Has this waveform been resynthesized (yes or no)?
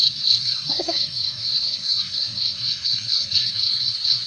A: yes